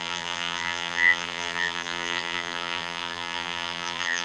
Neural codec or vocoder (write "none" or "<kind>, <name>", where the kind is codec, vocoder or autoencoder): vocoder, BigVGAN v2